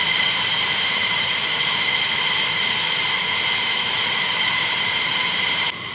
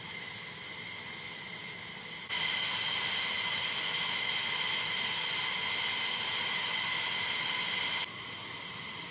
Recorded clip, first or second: second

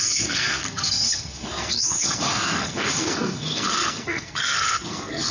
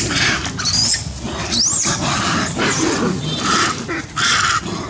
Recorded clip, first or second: second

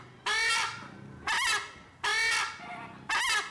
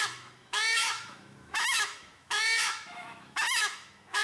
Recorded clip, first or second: first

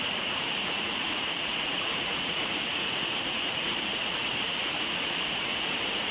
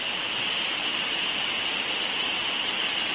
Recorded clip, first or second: second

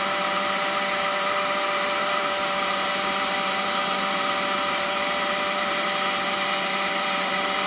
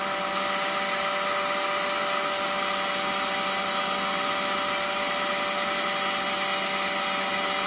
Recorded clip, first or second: second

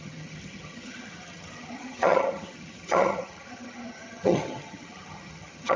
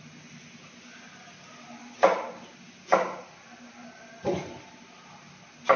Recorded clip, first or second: second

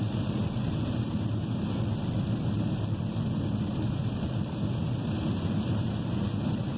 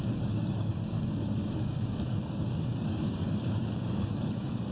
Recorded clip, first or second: first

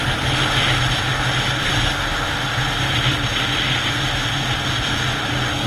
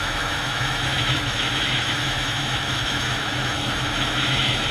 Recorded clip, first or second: first